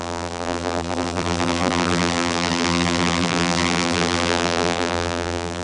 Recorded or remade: remade